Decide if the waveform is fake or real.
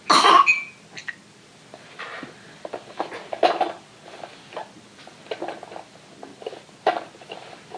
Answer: real